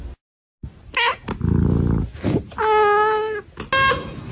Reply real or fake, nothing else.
real